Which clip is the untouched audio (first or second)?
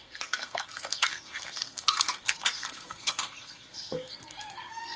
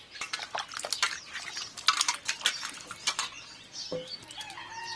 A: second